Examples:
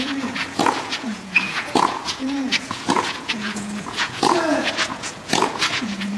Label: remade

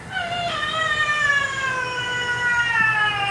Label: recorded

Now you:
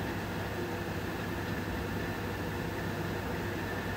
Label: recorded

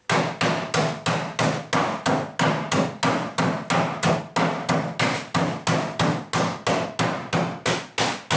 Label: recorded